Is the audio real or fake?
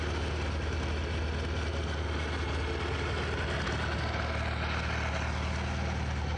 real